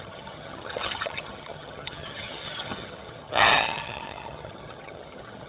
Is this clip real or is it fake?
fake